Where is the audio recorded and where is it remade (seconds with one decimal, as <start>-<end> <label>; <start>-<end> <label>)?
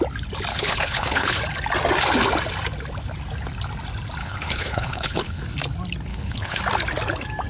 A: 0.0-0.5 recorded; 0.5-1.4 remade; 1.4-4.2 recorded; 4.2-5.4 remade; 5.4-6.1 recorded; 6.1-6.6 remade; 6.6-7.5 recorded